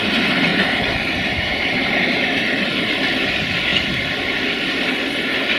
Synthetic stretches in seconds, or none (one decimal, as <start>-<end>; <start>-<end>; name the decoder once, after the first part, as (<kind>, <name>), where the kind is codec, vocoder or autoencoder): 0.5-2.7 (vocoder, BigVGAN v2); 3.7-4.6